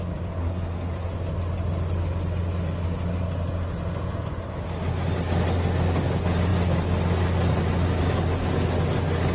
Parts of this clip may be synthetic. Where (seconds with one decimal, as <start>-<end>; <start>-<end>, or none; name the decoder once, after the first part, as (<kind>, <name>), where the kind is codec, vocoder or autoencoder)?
0.4-1.1 (codec, SNAC)